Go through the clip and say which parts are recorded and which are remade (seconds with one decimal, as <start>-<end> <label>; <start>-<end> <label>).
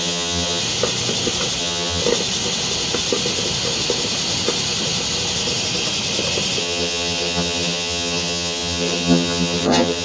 0.0-0.6 remade; 0.6-1.6 recorded; 1.6-2.0 remade; 2.0-6.6 recorded; 6.6-10.0 remade